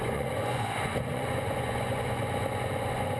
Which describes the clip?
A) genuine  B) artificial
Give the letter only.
B